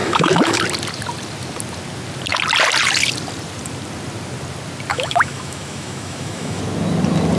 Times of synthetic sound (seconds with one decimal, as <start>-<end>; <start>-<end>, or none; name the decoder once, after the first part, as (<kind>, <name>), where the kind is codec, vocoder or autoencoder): 0.0-0.6 (autoencoder, DAC-VAE); 4.9-6.6